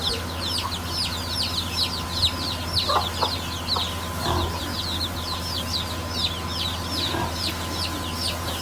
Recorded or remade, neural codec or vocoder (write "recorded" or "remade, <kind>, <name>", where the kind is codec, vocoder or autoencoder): recorded